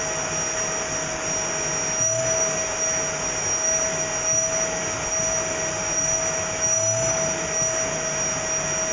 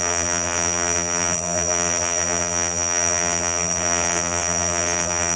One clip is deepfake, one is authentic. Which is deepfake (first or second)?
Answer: second